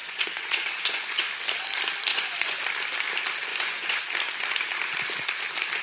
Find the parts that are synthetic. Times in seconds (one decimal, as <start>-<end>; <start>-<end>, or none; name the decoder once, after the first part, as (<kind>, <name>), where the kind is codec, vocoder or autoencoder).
0.0-1.2 (vocoder, Vocos); 2.1-2.6; 3.5-4.0